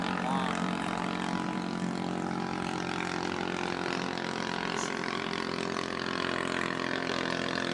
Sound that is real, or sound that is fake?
real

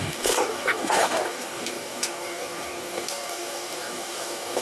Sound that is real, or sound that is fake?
fake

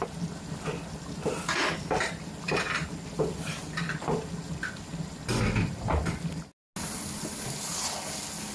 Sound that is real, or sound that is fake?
real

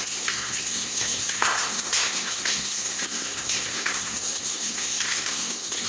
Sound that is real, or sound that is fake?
fake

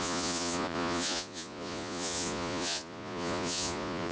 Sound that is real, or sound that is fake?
fake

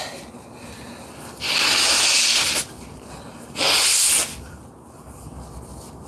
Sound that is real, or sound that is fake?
real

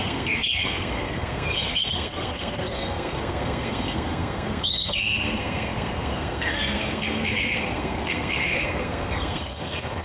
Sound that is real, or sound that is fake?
fake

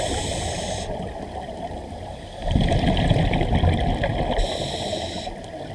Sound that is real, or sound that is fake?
real